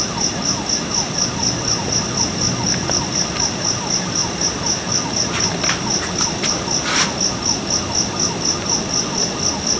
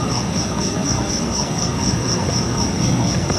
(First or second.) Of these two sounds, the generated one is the second